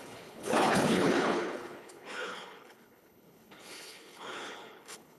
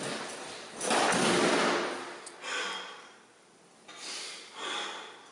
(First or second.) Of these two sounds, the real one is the second